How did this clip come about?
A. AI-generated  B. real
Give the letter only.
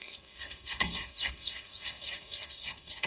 A